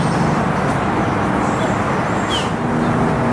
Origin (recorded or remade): recorded